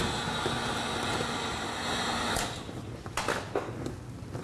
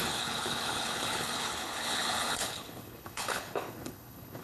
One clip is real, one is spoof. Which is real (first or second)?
first